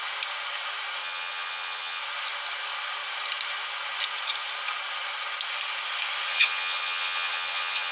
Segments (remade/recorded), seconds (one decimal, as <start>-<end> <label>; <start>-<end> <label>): 0.0-1.0 recorded; 1.0-2.0 remade; 2.0-6.3 recorded; 6.3-7.9 remade